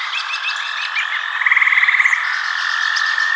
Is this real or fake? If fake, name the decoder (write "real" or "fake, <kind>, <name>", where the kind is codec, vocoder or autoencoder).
real